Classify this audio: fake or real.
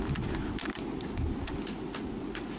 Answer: real